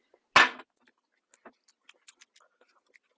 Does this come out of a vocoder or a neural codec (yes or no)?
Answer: no